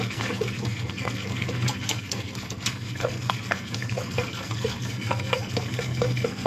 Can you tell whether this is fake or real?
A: fake